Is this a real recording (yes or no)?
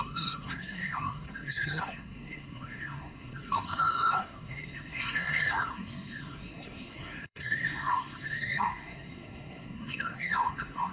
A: no